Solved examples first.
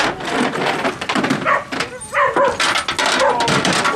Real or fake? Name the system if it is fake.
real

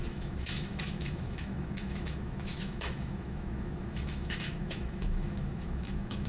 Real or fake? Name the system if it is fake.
fake, autoencoder, DAC-VAE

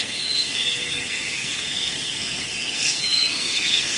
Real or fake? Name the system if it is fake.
fake, codec, SNAC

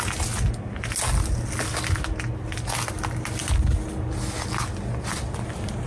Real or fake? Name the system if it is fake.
real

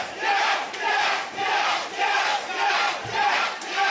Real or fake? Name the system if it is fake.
fake, vocoder, BigVGAN v2